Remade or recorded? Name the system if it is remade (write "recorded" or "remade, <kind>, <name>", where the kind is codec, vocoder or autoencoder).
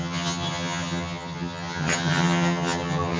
remade, vocoder, HiFi-GAN